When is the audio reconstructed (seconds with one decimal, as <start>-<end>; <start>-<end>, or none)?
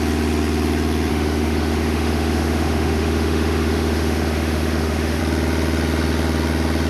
1.1-5.2